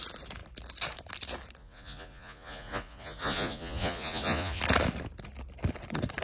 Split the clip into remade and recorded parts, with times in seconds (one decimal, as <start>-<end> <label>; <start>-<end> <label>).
0.0-1.6 recorded; 1.6-4.6 remade; 4.6-6.2 recorded